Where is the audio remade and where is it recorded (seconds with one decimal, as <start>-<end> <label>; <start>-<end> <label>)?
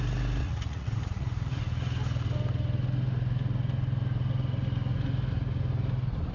0.0-0.4 recorded; 0.4-1.5 remade; 1.5-6.3 recorded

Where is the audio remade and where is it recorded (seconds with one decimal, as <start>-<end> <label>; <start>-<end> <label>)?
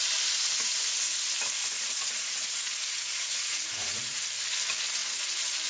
0.0-1.6 recorded; 1.6-4.2 remade; 4.2-5.7 recorded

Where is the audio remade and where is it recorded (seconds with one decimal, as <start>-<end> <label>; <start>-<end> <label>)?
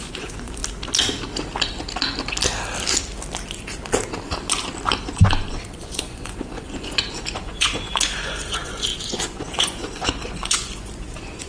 0.0-0.6 remade; 0.6-5.0 recorded; 5.0-11.5 remade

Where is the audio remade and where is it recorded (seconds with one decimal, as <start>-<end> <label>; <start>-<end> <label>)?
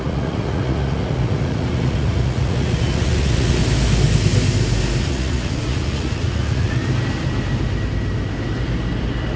0.0-3.6 remade; 3.6-5.0 recorded; 5.0-6.8 remade; 6.8-9.4 recorded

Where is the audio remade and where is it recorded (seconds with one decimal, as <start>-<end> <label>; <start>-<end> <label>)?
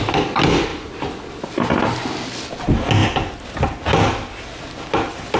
0.0-5.4 recorded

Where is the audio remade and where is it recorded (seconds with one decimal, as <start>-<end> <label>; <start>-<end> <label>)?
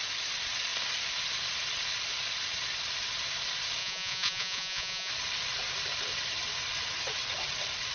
0.0-3.8 recorded; 3.8-5.1 remade; 5.1-7.9 recorded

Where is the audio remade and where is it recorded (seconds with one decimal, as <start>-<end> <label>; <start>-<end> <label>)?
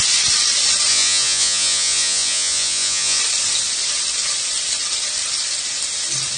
0.0-0.9 recorded; 0.9-3.2 remade; 3.2-6.4 recorded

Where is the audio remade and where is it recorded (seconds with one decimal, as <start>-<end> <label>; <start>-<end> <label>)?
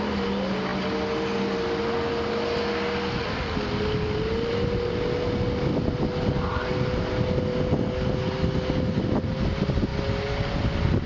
0.0-11.1 recorded